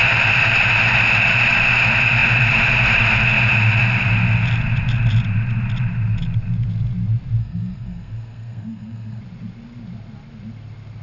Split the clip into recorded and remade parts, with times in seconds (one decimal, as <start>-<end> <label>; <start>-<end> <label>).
0.0-7.4 recorded; 7.4-9.2 remade; 9.2-11.0 recorded